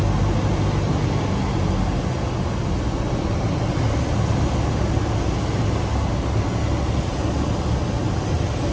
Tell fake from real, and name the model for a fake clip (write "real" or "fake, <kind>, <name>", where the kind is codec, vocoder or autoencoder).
real